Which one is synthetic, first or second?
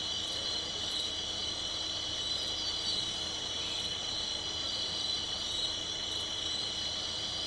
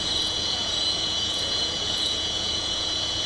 second